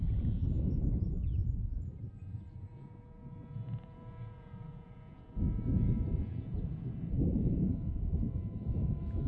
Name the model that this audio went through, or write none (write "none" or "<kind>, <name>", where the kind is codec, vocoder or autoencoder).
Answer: vocoder, Vocos